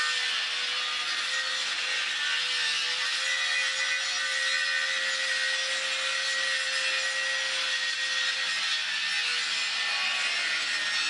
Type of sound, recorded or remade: recorded